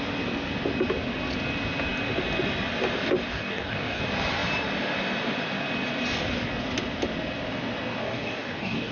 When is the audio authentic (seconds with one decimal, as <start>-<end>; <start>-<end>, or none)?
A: 0.0-3.3; 4.0-8.0

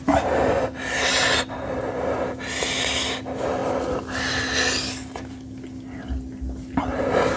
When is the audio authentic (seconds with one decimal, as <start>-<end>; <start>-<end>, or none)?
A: 0.0-7.4